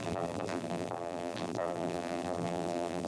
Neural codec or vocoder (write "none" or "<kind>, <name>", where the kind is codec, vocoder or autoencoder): vocoder, BigVGAN v2